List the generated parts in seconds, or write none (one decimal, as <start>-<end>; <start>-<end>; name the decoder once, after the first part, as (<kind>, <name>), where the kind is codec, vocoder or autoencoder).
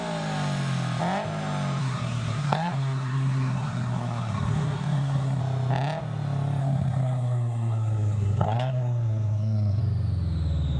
1.8-5.4 (codec, SNAC); 6.6-9.8